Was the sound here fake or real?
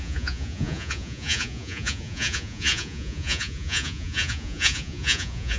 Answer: fake